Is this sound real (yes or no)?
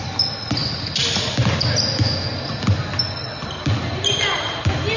yes